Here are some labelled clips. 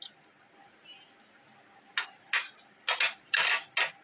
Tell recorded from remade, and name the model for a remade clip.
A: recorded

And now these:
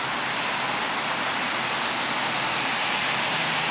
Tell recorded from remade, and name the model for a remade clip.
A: recorded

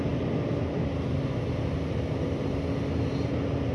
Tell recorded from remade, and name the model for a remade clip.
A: recorded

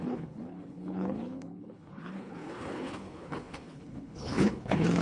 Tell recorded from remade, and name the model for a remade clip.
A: remade, codec, HILCodec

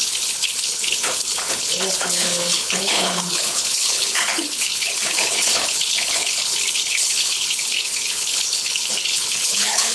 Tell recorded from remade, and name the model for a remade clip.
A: remade, codec, HILCodec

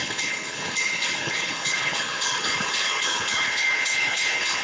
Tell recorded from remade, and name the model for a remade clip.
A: remade, codec, HILCodec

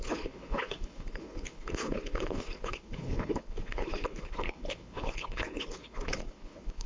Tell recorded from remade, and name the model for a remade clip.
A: remade, codec, HILCodec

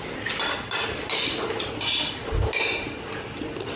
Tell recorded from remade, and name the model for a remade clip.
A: recorded